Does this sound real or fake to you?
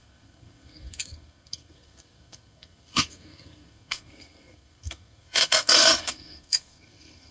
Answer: fake